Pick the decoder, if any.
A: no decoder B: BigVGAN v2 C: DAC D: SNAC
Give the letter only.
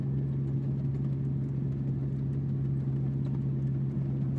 A